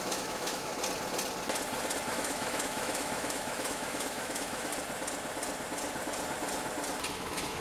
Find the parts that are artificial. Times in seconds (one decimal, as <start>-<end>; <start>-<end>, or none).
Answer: 0.0-0.7; 2.1-4.7; 7.1-7.6